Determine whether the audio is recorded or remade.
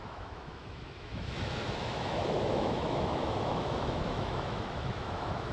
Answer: remade